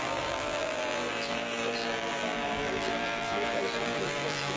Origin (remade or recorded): remade